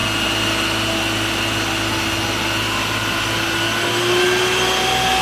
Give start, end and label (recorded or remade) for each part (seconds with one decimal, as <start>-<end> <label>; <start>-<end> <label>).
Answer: 0.0-5.2 recorded